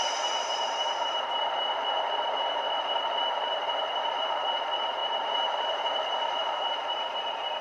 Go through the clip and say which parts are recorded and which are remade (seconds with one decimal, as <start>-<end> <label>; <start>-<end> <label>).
0.0-7.6 remade